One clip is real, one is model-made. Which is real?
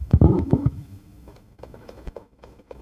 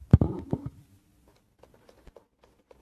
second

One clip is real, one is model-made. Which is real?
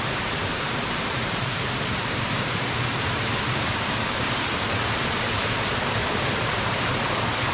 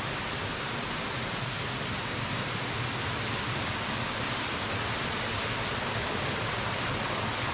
second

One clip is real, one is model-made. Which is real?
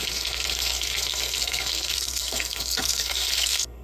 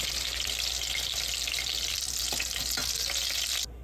second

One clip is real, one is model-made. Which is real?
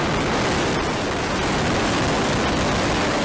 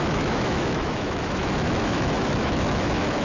first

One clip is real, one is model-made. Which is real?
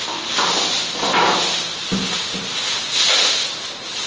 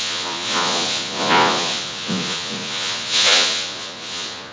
first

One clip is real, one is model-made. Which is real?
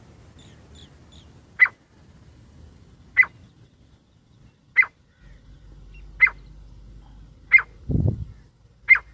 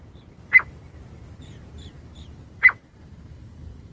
first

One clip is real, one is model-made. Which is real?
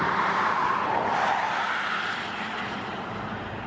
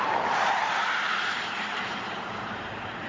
first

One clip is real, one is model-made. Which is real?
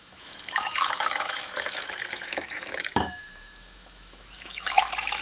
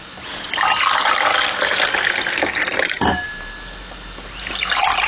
second